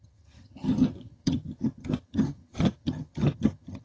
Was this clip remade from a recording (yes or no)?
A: yes